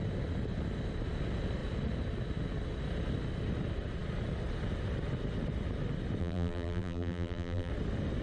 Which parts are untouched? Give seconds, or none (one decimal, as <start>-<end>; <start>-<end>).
0.0-6.2; 7.7-8.2